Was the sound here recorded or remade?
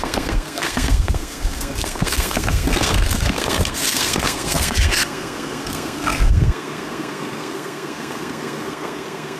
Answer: remade